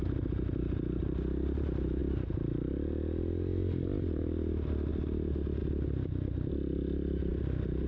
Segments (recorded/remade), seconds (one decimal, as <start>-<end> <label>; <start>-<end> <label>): 0.0-7.9 recorded